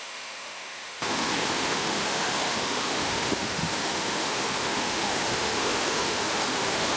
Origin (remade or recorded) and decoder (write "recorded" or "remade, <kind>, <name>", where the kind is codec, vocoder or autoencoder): remade, autoencoder, DAC-VAE